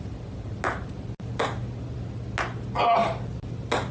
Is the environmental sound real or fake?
real